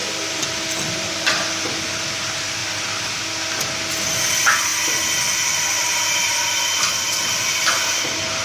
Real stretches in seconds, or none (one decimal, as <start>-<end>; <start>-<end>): 0.0-8.4